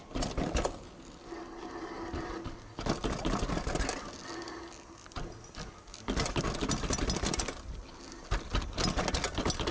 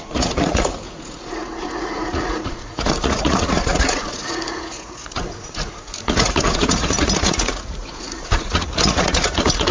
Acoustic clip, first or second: first